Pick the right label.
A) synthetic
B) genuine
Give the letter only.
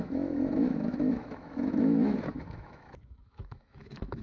A